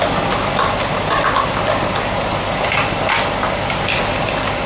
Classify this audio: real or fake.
real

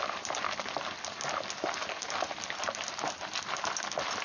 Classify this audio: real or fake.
real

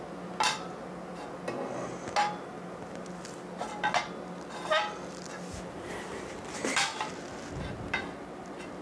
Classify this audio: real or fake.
real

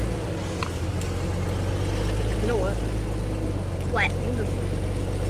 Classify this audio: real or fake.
real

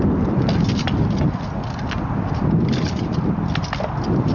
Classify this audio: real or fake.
real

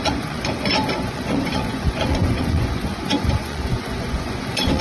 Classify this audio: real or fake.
fake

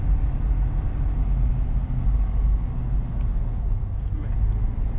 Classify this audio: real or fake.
real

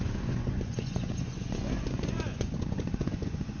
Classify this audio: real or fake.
fake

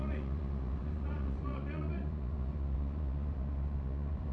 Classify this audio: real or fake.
fake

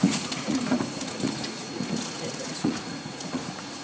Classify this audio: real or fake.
fake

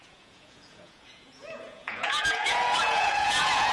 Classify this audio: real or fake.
fake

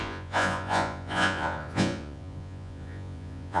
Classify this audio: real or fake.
fake